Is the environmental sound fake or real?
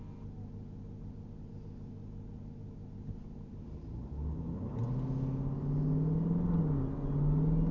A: real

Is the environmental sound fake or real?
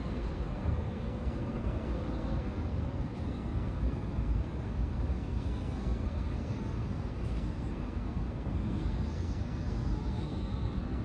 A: fake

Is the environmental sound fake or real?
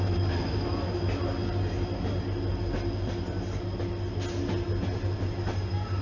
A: real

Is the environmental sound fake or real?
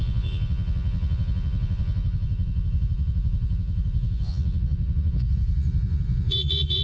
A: fake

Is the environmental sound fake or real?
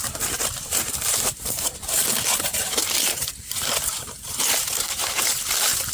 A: fake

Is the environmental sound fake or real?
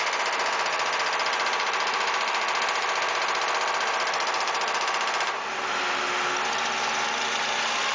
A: real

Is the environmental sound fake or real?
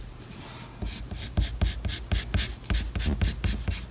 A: real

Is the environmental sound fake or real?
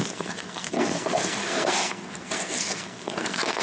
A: fake